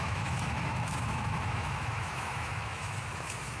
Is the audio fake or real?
fake